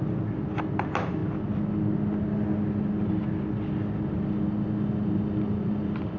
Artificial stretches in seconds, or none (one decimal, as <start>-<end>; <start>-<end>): none